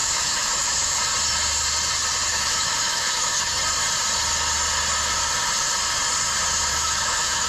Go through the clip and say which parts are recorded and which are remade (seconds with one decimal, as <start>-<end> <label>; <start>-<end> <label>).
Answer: 0.0-1.0 remade; 1.0-2.3 recorded; 2.3-3.6 remade; 3.6-6.7 recorded; 6.7-7.5 remade